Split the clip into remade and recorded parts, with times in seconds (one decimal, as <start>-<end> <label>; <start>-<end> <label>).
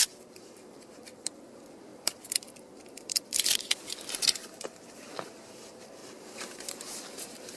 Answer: 0.0-7.6 remade